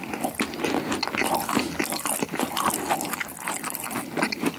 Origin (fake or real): real